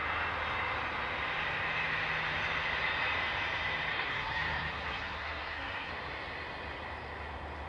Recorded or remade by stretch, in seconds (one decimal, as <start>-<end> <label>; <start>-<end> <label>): 0.0-3.9 recorded; 3.9-5.9 remade; 5.9-7.7 recorded